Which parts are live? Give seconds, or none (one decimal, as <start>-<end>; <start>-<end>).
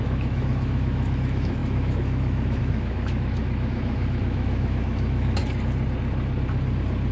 5.4-7.1